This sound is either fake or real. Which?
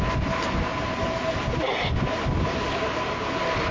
real